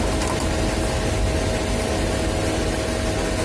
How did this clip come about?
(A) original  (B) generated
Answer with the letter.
A